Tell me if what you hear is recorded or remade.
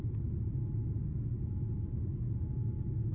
recorded